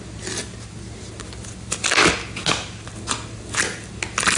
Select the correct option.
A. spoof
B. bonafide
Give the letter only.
B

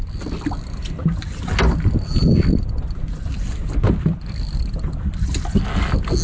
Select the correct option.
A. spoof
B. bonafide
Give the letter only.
B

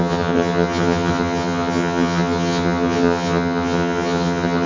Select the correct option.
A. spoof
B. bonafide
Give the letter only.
A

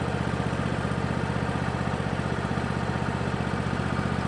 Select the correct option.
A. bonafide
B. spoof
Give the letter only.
A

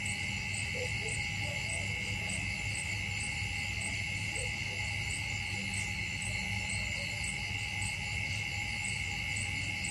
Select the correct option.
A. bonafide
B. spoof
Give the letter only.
A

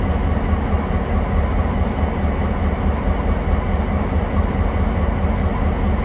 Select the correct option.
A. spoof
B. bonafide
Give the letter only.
B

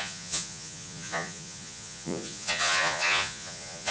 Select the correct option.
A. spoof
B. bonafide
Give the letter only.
A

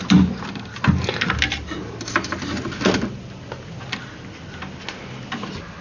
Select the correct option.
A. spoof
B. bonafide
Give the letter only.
B